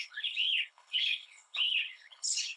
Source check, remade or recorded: remade